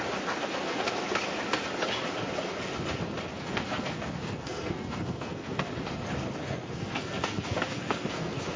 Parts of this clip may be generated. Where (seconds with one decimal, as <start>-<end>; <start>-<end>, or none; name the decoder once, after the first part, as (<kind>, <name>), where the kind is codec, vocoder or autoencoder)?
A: 0.4-0.9 (codec, SNAC); 3.3-5.7; 6.4-8.6